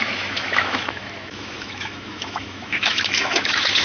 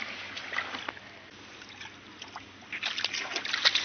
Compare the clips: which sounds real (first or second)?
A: second